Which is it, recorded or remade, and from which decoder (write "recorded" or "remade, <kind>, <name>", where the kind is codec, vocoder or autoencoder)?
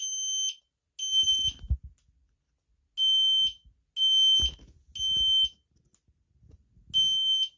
recorded